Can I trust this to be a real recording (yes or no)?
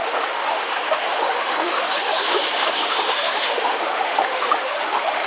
no